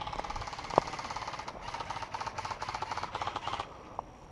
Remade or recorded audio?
recorded